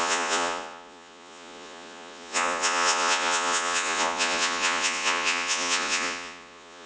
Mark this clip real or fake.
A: fake